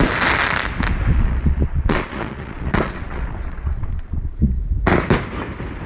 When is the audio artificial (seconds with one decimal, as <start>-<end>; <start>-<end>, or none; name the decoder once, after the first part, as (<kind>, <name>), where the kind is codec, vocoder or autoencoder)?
1.1-4.6 (vocoder, Vocos)